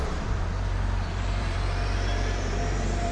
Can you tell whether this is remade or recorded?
remade